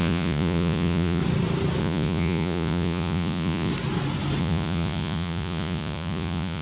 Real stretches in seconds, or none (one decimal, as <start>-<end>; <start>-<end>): 1.2-1.8; 3.7-4.4